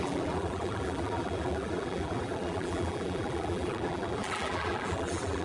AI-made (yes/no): yes